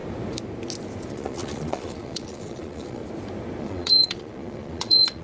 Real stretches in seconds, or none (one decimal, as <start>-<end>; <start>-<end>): 0.0-1.1; 3.0-3.6